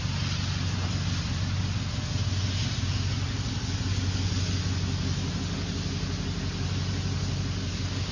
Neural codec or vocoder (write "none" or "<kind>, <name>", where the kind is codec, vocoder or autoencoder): none